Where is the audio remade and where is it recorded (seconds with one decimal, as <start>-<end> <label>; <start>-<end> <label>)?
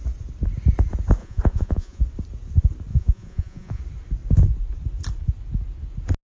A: 0.0-1.2 recorded; 1.2-2.0 remade; 2.0-2.9 recorded; 2.9-3.8 remade; 3.8-6.3 recorded